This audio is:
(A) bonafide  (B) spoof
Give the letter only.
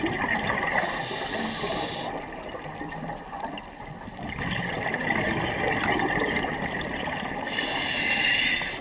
A